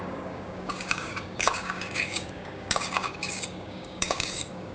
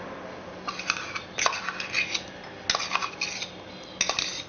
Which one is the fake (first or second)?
first